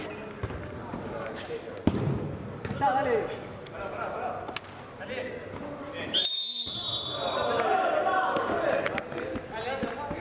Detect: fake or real real